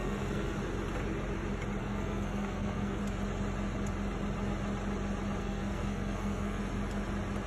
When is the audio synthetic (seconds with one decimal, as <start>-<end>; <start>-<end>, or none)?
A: 0.0-0.6; 1.8-3.0; 5.4-6.6